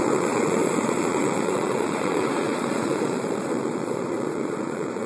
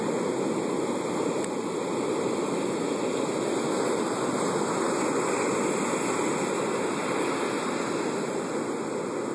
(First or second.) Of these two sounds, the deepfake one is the first